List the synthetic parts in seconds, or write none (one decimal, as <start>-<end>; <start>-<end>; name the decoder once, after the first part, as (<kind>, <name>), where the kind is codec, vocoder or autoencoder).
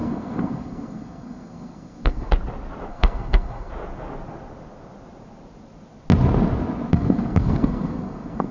0.0-2.3 (codec, SNAC); 2.9-3.7; 6.9-8.5